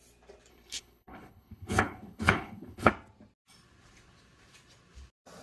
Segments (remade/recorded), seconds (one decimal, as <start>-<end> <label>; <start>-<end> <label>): 0.0-0.5 recorded; 0.5-2.9 remade; 2.9-5.4 recorded